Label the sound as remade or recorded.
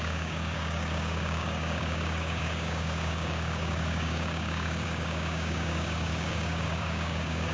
remade